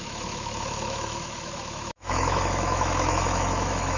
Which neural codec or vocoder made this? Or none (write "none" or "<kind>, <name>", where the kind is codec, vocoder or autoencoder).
autoencoder, DAC-VAE